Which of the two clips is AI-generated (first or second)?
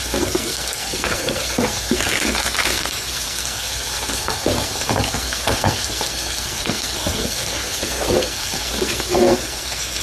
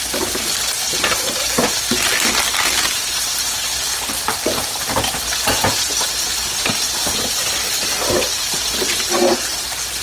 first